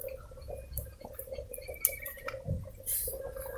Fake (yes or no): no